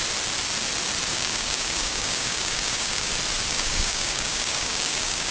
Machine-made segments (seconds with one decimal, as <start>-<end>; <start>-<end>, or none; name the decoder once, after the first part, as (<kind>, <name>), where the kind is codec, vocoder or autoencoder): 1.1-3.1 (codec, DAC); 3.5-5.3